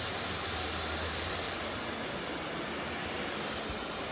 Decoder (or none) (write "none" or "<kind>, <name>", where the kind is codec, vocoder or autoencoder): none